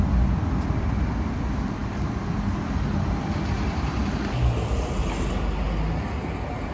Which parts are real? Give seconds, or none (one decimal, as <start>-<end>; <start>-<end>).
0.0-6.7